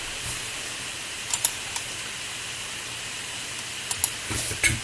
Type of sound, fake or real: real